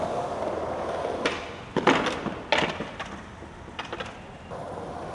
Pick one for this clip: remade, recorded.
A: recorded